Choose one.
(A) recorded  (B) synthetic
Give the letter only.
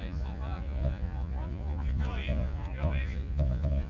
B